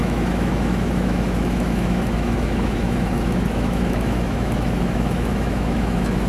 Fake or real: fake